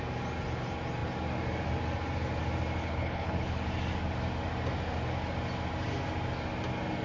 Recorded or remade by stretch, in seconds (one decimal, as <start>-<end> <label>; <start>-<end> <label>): 0.0-2.8 recorded; 2.8-3.6 remade; 3.6-7.0 recorded